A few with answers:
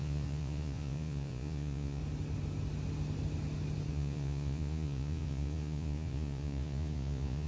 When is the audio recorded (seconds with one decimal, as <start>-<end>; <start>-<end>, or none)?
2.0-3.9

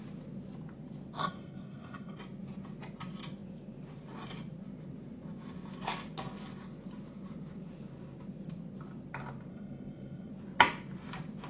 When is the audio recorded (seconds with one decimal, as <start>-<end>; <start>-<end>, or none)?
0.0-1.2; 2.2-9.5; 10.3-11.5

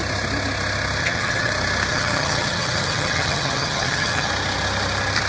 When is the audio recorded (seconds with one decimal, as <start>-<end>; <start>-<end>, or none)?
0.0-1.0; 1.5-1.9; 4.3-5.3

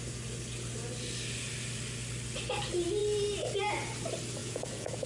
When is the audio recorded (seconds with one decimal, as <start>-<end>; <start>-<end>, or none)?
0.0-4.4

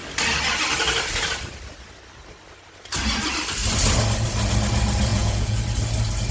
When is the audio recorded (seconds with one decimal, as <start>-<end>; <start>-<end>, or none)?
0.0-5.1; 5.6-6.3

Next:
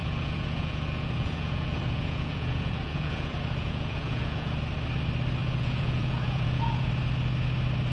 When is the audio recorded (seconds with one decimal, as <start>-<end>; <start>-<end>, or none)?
4.6-5.4; 6.9-7.9

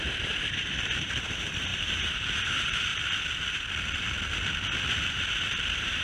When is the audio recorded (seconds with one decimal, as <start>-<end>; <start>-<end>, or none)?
2.9-5.4